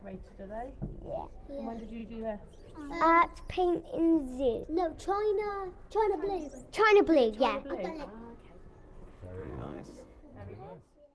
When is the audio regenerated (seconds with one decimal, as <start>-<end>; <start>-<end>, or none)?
9.4-10.2